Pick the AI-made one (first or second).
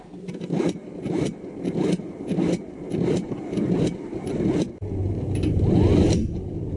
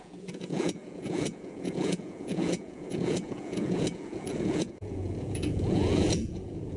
second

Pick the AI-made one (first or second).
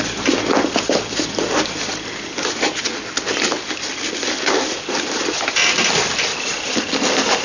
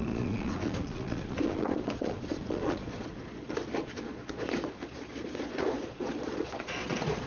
second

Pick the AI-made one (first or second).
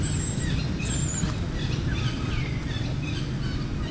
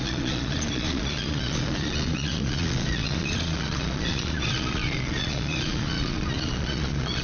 second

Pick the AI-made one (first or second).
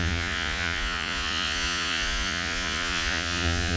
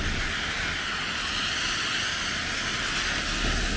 first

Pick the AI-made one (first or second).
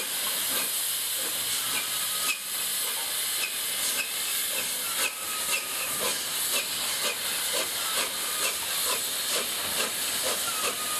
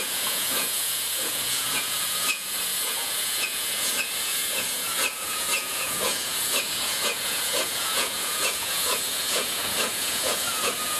second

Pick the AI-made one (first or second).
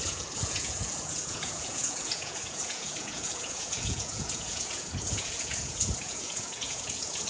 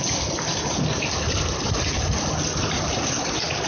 first